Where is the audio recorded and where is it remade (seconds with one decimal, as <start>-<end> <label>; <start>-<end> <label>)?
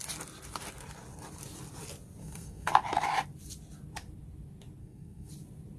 0.0-2.2 recorded; 2.2-2.7 remade; 2.7-4.8 recorded; 4.8-5.3 remade; 5.3-5.8 recorded